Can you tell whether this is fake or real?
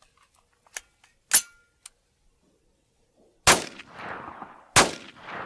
real